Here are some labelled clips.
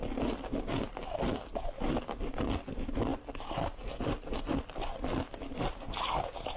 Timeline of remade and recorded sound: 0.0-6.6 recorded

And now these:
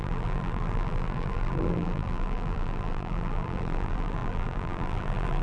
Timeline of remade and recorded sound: 0.0-5.4 remade

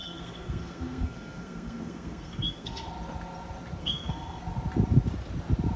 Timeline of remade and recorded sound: 0.0-2.9 remade; 2.9-3.8 recorded; 3.8-4.4 remade; 4.4-5.8 recorded

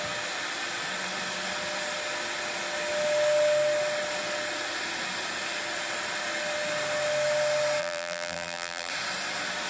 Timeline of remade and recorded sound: 0.0-7.8 recorded; 7.8-8.9 remade; 8.9-9.7 recorded